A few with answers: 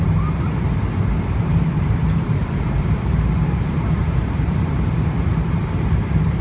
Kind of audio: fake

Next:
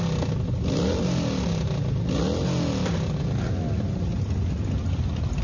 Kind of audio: real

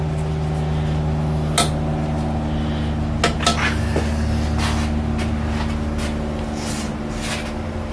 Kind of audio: real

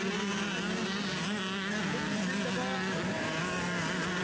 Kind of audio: real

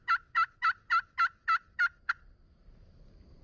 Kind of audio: real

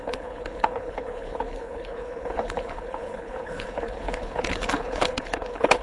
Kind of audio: fake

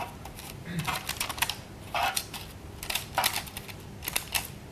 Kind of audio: real